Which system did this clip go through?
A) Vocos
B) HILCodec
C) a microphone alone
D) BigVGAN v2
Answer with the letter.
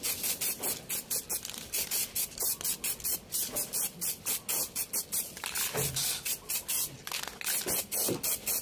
C